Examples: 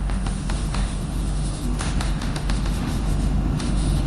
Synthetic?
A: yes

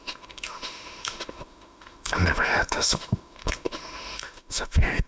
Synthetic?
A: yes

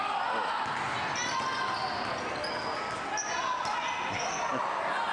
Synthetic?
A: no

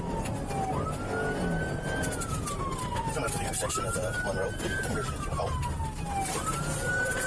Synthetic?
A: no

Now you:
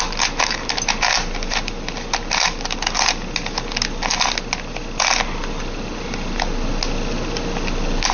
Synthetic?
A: no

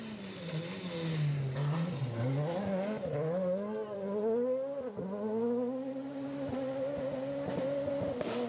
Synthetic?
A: no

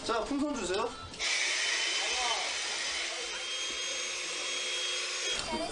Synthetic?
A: no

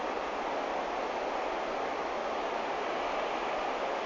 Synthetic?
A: no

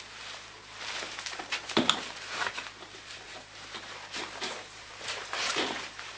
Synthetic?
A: yes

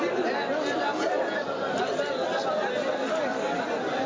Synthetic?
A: no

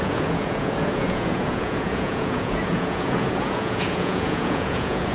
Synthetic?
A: yes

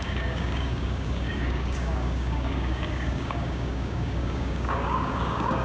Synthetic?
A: yes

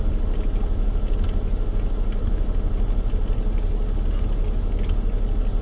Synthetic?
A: no